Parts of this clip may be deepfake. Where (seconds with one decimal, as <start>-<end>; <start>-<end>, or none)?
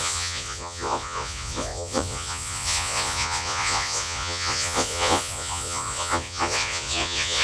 0.0-7.4